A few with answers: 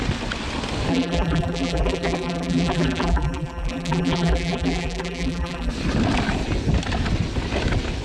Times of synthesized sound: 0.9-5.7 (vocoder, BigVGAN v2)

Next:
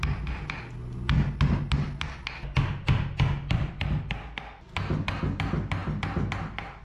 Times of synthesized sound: none